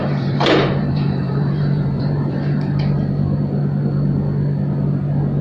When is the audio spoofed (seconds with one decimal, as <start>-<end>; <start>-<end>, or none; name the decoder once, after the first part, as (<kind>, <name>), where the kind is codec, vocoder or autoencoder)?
0.0-2.8 (vocoder, BigVGAN v2)